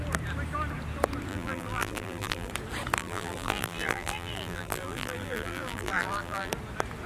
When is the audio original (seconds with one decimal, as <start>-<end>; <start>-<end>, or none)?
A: 0.0-1.3; 2.5-3.0; 6.5-7.1